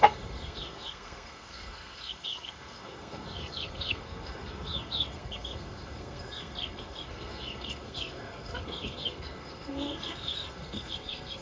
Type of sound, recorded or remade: remade